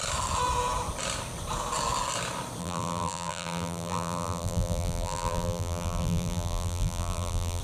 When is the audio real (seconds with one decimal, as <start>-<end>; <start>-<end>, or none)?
0.0-2.6